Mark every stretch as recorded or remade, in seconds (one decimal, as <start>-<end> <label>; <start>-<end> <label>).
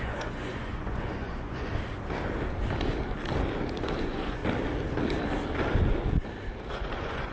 0.0-1.7 remade; 1.7-4.0 recorded; 4.0-4.4 remade; 4.4-6.7 recorded; 6.7-7.3 remade